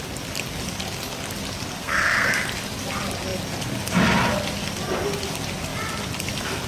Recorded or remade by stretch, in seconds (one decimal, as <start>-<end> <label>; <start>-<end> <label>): 0.0-1.8 recorded; 1.8-2.3 remade; 2.3-6.7 recorded